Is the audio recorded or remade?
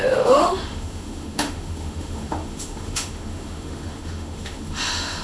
remade